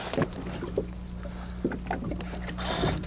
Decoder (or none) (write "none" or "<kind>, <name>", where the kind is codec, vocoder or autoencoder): vocoder, BigVGAN v2